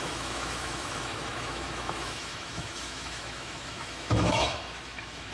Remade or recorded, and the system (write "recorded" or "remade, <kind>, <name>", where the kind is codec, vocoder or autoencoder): remade, autoencoder, DAC-VAE